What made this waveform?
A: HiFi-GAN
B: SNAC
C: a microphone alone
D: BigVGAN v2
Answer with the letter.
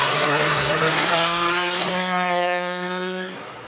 B